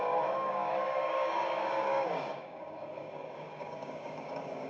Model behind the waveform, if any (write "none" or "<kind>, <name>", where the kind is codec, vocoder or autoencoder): codec, DAC